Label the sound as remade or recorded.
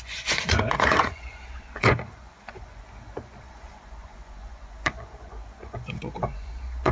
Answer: remade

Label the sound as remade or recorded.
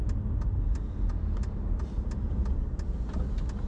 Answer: recorded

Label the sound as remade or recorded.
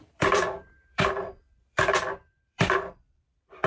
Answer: remade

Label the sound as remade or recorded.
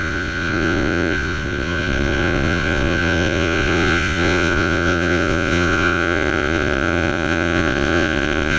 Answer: remade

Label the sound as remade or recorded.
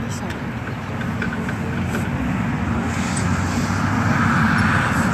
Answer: recorded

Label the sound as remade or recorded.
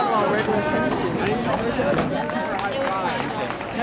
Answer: recorded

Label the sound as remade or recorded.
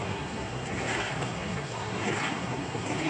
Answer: remade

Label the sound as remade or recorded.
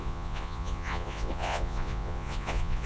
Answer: remade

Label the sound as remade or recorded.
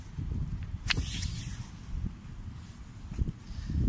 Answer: recorded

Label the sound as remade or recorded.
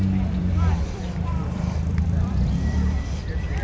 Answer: remade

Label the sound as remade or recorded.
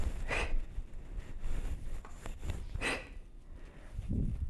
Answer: recorded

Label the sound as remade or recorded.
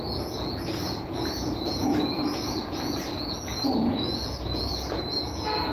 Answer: remade